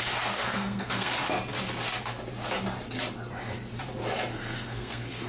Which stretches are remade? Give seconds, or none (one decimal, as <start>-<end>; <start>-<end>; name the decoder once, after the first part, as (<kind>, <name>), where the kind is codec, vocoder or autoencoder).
0.0-1.1 (codec, SNAC); 4.3-5.3